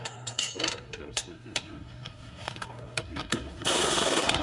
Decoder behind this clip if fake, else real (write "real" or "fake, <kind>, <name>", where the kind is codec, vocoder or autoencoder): fake, codec, SNAC